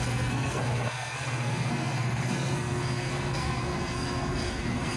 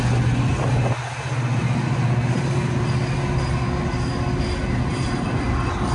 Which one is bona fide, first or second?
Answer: second